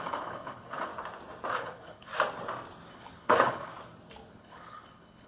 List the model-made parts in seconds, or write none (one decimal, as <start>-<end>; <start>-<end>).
0.0-0.9; 1.5-2.1; 2.9-3.7; 4.3-5.3